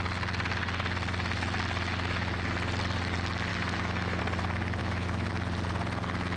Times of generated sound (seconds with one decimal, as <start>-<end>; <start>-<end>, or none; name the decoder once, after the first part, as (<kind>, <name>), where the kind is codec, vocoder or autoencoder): 3.5-4.2 (autoencoder, DAC-VAE); 4.8-5.3